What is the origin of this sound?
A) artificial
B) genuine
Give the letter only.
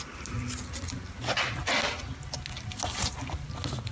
B